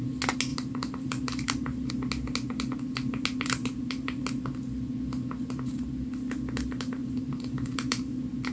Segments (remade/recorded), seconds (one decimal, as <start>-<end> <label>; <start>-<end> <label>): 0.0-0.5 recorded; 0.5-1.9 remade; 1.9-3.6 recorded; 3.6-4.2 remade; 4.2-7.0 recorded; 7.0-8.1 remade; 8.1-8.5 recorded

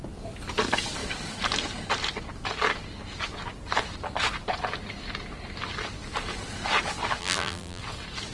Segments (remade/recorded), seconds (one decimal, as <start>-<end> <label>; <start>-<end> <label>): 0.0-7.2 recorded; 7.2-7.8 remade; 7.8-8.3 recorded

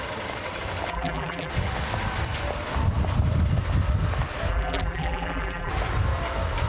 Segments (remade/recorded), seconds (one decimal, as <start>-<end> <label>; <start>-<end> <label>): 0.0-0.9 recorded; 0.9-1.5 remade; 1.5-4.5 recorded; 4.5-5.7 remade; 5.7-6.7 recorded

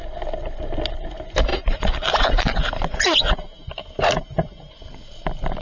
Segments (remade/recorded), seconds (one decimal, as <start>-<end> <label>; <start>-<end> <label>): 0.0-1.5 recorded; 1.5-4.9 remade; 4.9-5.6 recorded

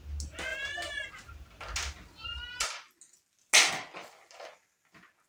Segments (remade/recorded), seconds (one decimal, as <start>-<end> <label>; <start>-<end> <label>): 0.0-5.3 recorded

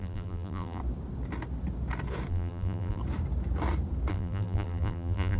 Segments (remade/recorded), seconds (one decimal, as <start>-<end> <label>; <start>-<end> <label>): 0.0-0.8 remade; 0.8-2.3 recorded; 2.3-3.0 remade; 3.0-4.1 recorded; 4.1-5.4 remade

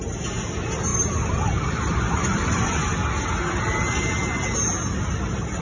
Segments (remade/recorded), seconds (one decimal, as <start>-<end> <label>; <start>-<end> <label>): 0.0-0.9 recorded; 0.9-3.2 remade; 3.2-5.6 recorded

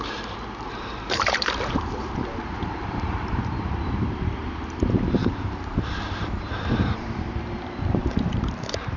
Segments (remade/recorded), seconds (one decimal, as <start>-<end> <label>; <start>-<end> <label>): 0.0-9.0 remade